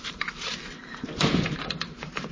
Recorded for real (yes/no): no